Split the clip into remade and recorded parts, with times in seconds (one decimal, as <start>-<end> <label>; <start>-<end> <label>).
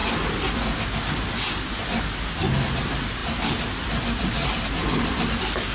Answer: 0.0-5.7 recorded